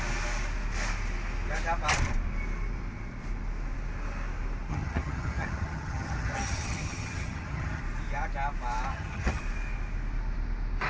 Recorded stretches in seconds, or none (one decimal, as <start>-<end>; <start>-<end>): 0.0-4.7; 7.8-8.9; 9.4-10.9